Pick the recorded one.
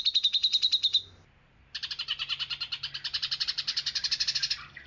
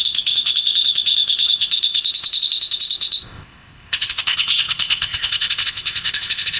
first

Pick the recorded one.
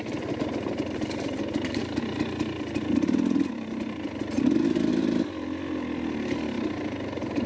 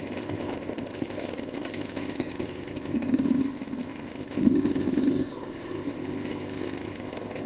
first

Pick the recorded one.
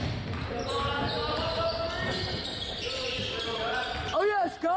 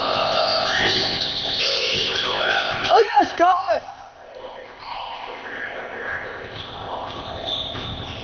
first